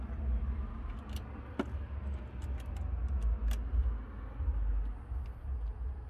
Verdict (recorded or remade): recorded